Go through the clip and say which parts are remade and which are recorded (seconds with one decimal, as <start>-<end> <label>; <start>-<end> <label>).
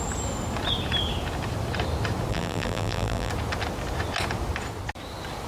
0.0-2.3 recorded; 2.3-3.3 remade; 3.3-5.5 recorded